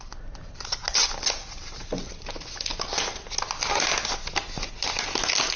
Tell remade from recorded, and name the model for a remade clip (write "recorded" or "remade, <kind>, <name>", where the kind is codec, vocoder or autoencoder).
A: recorded